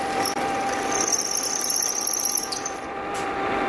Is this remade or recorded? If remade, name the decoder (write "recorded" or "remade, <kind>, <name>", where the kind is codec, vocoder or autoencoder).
recorded